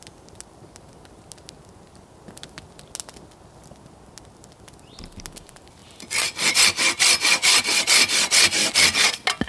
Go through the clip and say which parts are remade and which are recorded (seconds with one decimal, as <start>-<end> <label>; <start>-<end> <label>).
0.0-9.5 recorded